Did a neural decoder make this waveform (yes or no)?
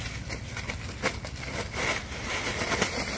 no